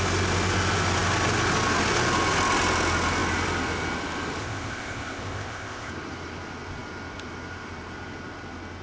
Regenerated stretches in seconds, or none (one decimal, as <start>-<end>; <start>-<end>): 4.4-5.9